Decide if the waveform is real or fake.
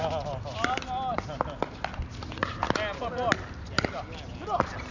real